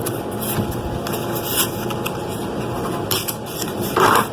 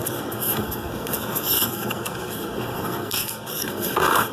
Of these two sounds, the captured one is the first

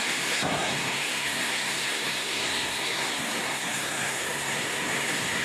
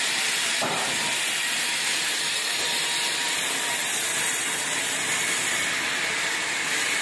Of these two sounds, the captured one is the second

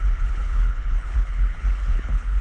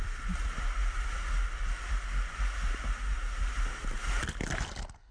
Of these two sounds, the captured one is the second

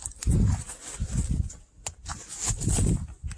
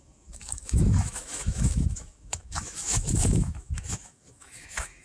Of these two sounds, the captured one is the first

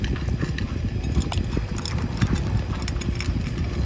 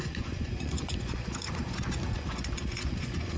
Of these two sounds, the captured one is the first